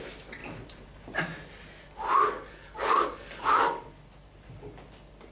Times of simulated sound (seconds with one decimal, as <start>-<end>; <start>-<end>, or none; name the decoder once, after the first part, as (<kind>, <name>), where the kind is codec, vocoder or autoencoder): 2.2-3.8 (codec, DAC)